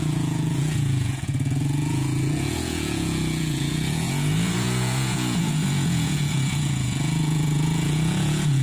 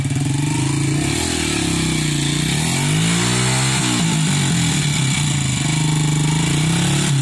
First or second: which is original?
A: second